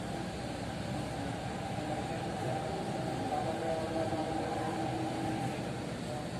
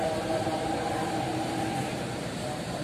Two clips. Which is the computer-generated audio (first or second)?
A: second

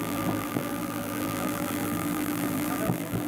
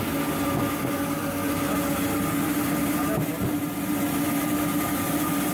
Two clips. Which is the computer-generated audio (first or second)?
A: first